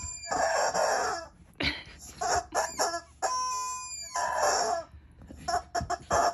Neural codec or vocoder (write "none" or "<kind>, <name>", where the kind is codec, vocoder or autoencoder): none